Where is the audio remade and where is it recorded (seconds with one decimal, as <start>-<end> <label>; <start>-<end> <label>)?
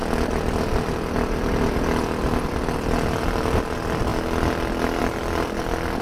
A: 0.0-6.0 recorded